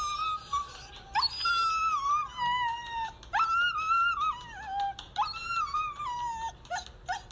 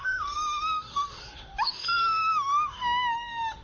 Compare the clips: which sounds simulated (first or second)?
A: second